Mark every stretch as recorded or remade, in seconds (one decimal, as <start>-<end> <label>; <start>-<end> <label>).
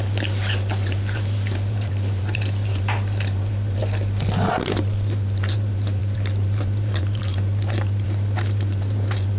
0.0-3.8 remade; 3.8-4.5 recorded; 4.5-9.4 remade